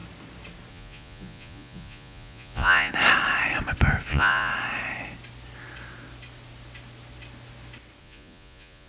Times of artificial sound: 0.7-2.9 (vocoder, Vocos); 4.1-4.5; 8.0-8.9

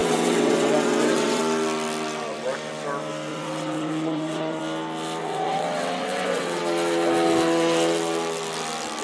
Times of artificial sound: 0.0-1.4 (vocoder, WaveNeXt); 3.3-4.6; 5.2-6.6

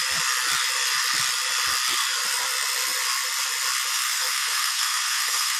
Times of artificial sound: 3.9-5.6 (codec, SNAC)

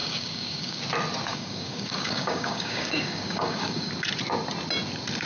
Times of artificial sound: 0.0-0.8 (codec, DAC); 1.3-3.9

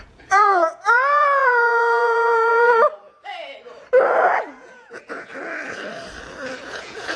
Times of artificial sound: 0.0-3.3 (vocoder, Vocos); 4.5-5.3; 6.6-7.2